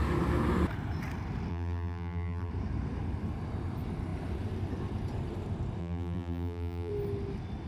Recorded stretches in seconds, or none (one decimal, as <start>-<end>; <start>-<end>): 0.0-1.5; 2.5-5.8; 6.9-7.7